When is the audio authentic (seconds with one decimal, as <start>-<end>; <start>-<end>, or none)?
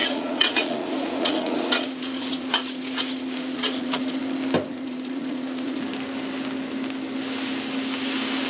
4.2-4.7; 5.8-8.5